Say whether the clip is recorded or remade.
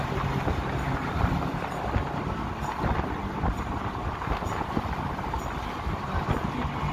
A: recorded